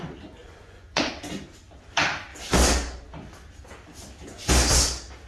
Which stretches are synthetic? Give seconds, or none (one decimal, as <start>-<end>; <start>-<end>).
0.4-1.1